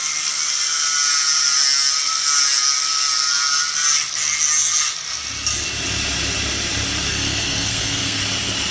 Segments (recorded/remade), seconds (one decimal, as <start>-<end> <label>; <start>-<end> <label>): 0.0-7.1 recorded; 7.1-8.2 remade; 8.2-8.7 recorded